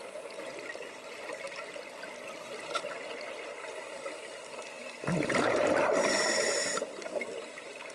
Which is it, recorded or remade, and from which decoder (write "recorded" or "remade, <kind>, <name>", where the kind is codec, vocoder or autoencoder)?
recorded